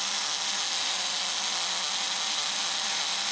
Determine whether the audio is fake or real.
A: real